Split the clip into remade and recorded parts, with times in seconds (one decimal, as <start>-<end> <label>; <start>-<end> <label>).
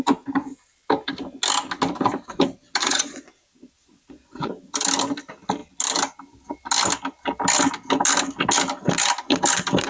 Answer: 0.0-2.8 recorded; 2.8-4.5 remade; 4.5-9.9 recorded